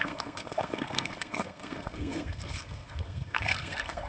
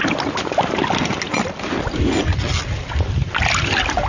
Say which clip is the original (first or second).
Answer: second